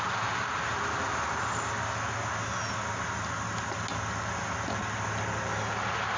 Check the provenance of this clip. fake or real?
real